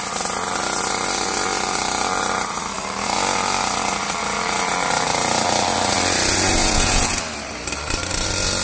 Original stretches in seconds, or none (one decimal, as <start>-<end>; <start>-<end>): 0.0-6.6; 7.2-8.6